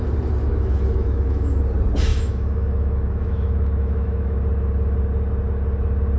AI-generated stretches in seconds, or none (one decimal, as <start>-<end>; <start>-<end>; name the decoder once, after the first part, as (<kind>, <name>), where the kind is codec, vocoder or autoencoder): 0.4-1.6 (autoencoder, DAC-VAE); 2.1-4.4